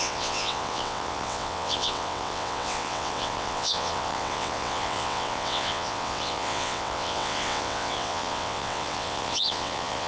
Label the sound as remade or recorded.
remade